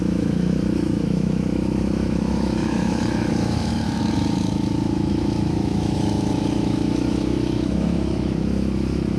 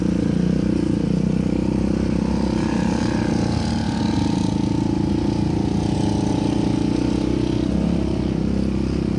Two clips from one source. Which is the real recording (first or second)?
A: second